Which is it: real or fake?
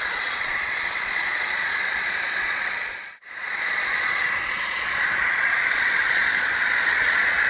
fake